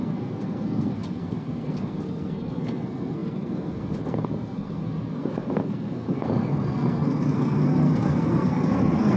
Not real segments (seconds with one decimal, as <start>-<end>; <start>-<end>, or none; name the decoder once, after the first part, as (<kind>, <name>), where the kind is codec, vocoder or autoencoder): 0.0-9.2 (codec, SNAC)